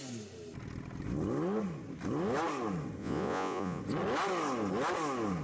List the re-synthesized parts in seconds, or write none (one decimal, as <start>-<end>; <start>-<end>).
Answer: 3.0-3.8